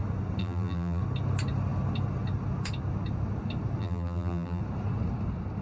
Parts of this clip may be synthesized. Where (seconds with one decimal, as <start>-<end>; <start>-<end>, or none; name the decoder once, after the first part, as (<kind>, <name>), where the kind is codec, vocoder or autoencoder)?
0.4-1.0 (vocoder, BigVGAN v2); 3.8-4.6